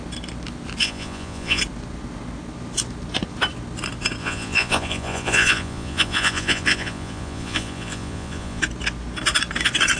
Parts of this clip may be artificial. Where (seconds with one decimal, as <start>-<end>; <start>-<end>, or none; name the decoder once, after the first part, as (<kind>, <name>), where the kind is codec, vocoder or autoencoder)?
0.8-1.6 (vocoder, Vocos); 4.2-8.6